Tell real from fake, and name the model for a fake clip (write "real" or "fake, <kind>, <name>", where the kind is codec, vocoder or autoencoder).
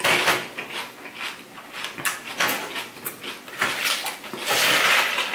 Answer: real